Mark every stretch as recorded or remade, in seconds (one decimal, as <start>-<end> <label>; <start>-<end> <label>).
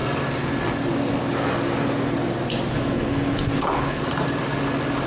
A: 0.0-2.7 recorded; 2.7-4.0 remade; 4.0-5.1 recorded